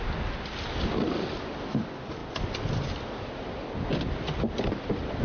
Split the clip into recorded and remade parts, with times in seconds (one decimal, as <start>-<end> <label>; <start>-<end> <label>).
0.0-5.2 recorded